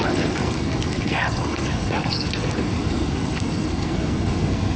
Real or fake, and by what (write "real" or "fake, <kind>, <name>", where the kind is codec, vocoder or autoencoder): fake, codec, SNAC